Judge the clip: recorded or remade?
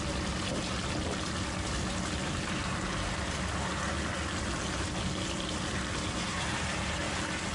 recorded